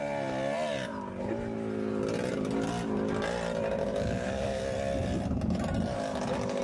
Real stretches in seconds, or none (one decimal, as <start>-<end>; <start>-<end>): 0.0-3.8; 4.6-5.9